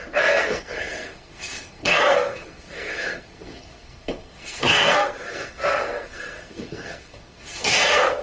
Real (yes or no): no